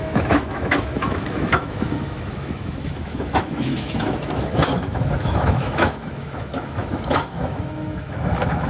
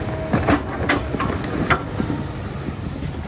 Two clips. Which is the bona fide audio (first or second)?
second